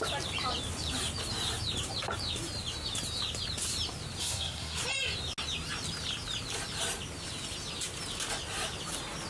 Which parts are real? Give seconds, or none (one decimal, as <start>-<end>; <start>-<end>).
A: 0.0-4.2; 4.8-9.3